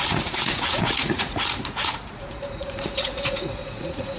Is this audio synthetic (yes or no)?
yes